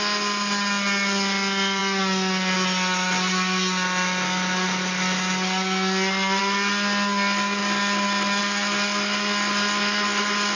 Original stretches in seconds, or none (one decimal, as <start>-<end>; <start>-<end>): 0.0-10.5